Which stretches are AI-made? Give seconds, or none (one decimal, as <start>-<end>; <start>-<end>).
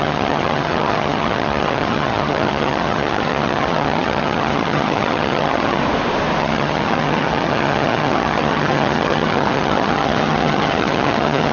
0.0-5.8; 6.4-11.5